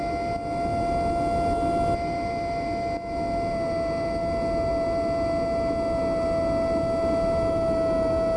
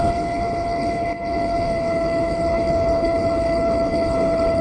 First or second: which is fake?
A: second